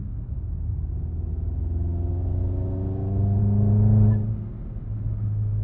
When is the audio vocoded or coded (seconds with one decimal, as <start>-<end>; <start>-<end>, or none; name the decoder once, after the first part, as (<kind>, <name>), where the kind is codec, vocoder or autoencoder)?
none